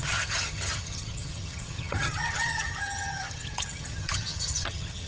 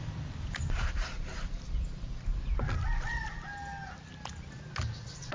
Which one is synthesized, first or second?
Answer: first